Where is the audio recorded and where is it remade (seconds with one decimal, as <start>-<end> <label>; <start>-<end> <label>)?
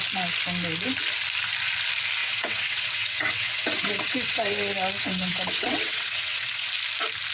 0.0-2.2 recorded; 2.2-4.5 remade; 4.5-5.0 recorded; 5.0-6.7 remade; 6.7-7.3 recorded